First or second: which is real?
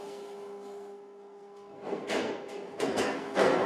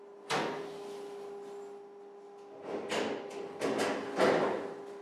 second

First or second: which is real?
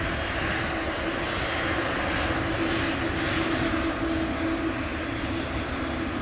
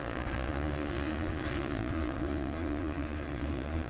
first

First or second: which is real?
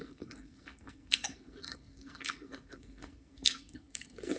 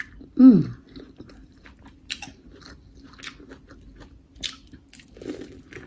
second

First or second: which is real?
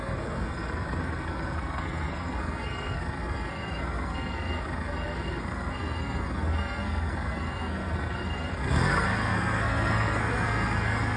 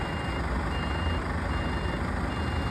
second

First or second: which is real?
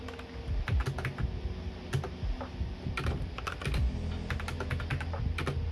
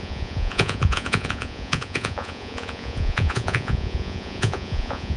first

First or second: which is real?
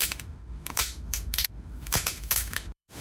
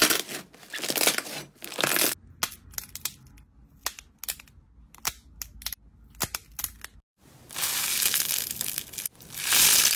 second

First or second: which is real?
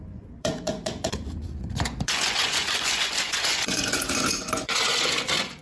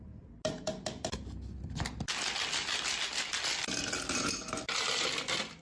second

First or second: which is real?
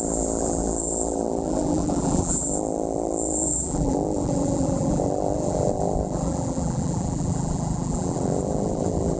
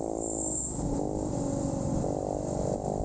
second